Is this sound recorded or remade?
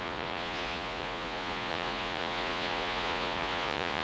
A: remade